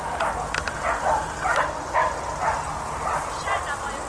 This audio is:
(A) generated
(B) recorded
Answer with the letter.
B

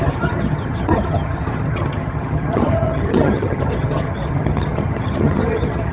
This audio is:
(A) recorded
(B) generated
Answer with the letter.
B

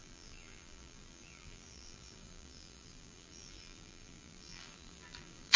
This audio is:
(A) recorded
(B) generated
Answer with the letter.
B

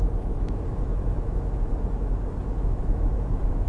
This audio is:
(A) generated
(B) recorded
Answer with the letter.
A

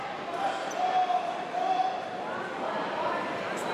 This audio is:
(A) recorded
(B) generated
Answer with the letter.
A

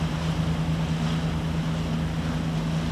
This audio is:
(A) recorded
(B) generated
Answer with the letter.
A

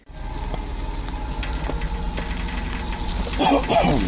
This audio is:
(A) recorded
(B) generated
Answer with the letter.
A